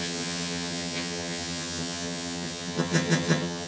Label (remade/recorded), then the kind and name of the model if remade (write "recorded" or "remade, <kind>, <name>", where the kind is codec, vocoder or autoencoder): remade, vocoder, HiFi-GAN